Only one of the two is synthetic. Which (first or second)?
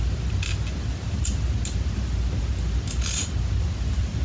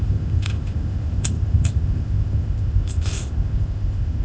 second